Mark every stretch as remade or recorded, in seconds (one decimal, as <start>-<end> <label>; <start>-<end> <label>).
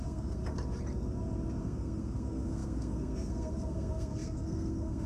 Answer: 0.0-0.4 remade; 0.4-1.6 recorded; 1.6-5.1 remade